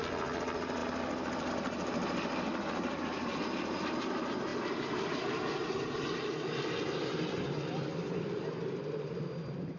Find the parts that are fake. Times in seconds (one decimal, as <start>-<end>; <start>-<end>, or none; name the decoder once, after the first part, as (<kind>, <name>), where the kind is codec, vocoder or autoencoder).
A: 0.0-4.5 (vocoder, BigVGAN v2); 7.0-9.8